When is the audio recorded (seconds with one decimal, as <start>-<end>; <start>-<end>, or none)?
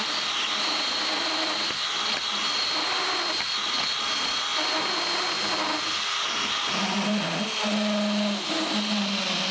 0.0-9.5